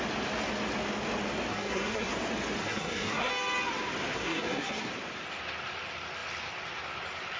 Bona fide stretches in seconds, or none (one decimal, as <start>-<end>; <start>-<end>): 0.0-1.5; 2.1-2.6; 3.3-4.1; 4.9-7.4

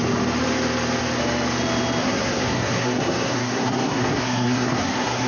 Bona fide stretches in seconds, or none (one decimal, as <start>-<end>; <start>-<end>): 0.0-2.0

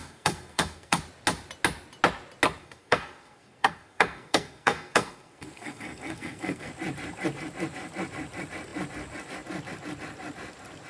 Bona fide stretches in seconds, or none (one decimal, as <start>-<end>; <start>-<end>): 1.0-2.6; 6.7-10.9

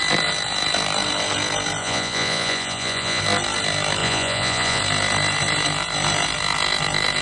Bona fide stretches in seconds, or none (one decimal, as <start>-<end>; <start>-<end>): 0.0-1.8; 3.2-4.0; 4.8-7.2